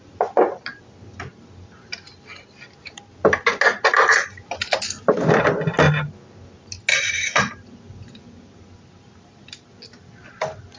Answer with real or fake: real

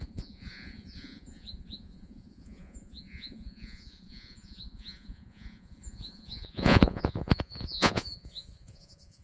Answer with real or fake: fake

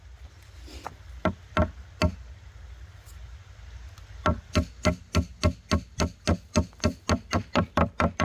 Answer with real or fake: real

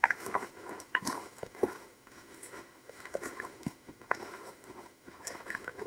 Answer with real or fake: fake